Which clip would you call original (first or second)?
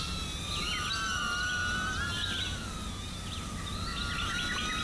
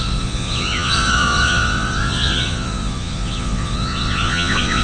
first